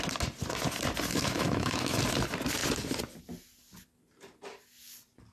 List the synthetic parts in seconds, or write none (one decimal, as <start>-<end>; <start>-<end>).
1.1-2.0